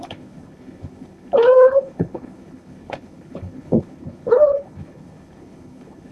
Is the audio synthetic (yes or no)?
yes